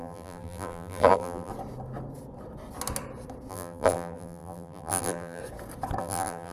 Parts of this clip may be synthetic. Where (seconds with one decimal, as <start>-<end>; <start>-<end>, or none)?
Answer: 0.0-1.5; 3.5-5.4; 6.0-6.5